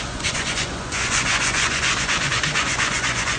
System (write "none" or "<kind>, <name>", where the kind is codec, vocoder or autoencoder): vocoder, Vocos